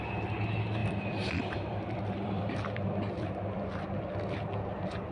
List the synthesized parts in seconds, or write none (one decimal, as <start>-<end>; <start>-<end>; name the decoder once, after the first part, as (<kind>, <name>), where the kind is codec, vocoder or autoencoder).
0.8-3.7 (vocoder, BigVGAN v2)